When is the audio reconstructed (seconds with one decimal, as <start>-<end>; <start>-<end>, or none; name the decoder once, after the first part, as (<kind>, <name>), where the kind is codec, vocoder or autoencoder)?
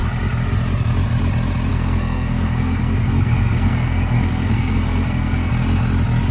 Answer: 1.7-5.5 (codec, SNAC)